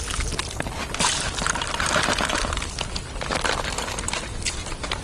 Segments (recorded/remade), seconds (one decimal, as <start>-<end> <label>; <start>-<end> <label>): 0.0-0.4 recorded; 0.4-1.1 remade; 1.1-2.3 recorded; 2.3-3.0 remade; 3.0-5.0 recorded